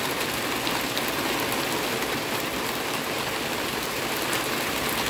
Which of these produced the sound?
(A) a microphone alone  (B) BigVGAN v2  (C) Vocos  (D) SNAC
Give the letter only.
A